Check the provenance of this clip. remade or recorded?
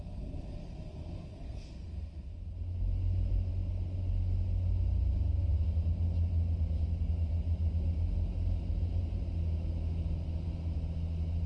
recorded